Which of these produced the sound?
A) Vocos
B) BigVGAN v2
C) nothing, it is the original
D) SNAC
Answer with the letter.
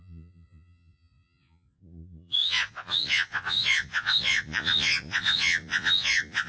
A